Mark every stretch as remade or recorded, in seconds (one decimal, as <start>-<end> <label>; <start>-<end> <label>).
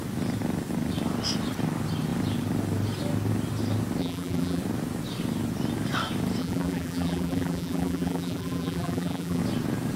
0.0-4.0 recorded; 4.0-4.6 remade; 4.6-6.4 recorded; 6.4-9.4 remade; 9.4-10.0 recorded